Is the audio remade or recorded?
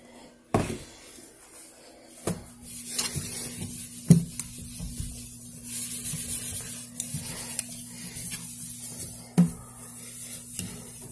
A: recorded